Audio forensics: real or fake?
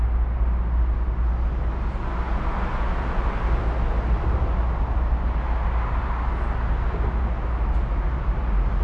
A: real